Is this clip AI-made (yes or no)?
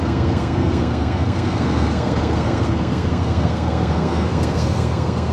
yes